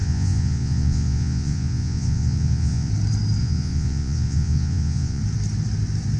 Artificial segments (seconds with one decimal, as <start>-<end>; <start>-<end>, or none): 0.0-2.9; 3.4-5.2